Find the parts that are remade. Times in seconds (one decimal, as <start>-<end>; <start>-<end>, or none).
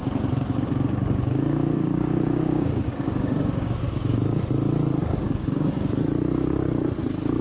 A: 0.0-4.4; 5.0-6.0